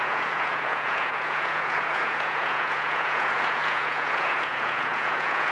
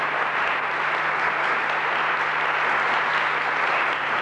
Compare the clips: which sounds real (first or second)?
second